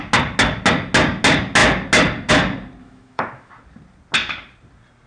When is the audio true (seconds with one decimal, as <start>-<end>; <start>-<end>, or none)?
0.0-2.8; 3.5-5.1